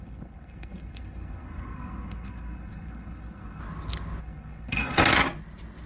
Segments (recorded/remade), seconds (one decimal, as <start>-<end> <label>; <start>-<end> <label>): 0.0-3.6 remade; 3.6-4.2 recorded; 4.2-5.0 remade; 5.0-5.9 recorded